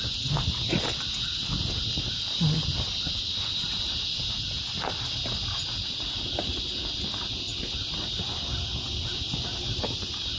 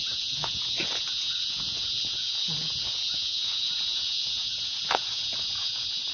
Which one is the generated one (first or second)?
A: second